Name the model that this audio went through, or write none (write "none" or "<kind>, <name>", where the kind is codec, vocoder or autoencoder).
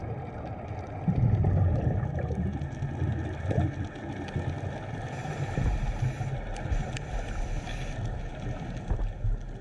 none